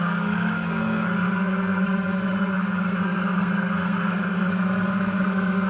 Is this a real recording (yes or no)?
no